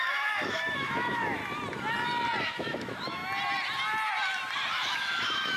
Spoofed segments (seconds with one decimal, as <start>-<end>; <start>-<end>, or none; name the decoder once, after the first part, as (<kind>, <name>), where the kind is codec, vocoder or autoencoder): 0.0-1.4 (autoencoder, DAC-VAE); 2.4-3.2; 4.7-5.6